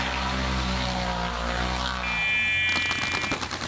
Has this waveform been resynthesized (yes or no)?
no